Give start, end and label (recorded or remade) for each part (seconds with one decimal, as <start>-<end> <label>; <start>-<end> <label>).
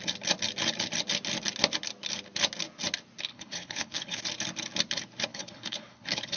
0.0-3.3 recorded; 3.3-4.2 remade; 4.2-5.3 recorded; 5.3-6.4 remade